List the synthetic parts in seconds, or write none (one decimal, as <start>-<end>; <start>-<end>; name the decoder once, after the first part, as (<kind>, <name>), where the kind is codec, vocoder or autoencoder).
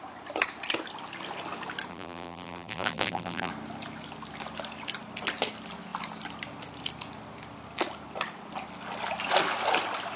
1.9-3.5 (vocoder, BigVGAN v2)